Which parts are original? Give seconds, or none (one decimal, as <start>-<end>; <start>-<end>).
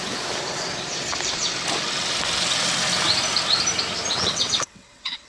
0.0-4.1